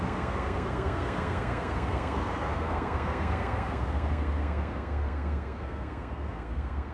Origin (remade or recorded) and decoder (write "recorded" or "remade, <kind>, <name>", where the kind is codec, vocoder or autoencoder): remade, codec, SNAC